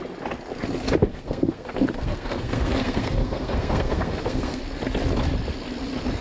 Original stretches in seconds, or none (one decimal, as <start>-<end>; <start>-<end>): 0.0-1.0; 4.6-6.2